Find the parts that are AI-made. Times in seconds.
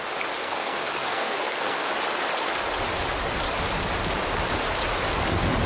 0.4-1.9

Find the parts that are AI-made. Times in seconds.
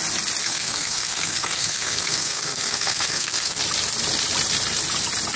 0.4-3.6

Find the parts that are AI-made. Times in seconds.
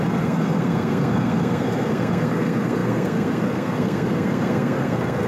0.0-5.3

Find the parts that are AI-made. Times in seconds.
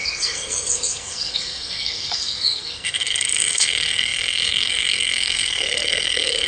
0.0-6.5